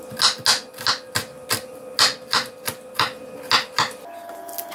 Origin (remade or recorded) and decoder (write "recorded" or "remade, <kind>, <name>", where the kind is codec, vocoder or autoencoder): recorded